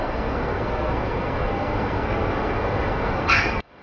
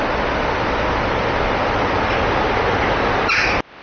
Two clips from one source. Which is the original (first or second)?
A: second